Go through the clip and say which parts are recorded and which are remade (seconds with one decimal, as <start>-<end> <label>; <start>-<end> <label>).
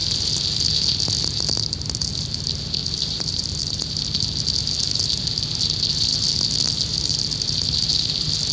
0.0-2.8 recorded; 2.8-4.0 remade; 4.0-8.5 recorded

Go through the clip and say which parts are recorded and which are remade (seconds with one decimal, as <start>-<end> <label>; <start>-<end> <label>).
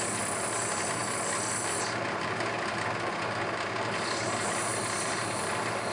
0.0-5.9 recorded